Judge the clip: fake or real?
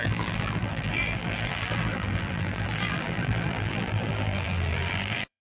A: fake